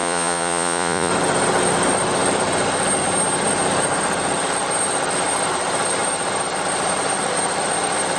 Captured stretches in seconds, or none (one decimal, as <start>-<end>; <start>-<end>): 1.1-8.2